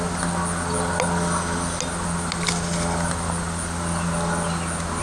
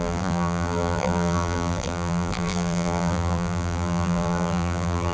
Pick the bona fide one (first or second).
first